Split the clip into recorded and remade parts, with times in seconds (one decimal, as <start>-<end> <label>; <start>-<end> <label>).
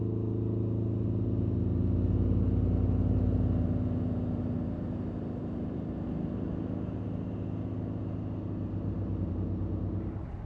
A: 0.0-10.5 recorded